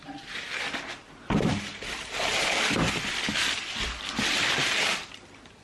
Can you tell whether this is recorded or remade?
remade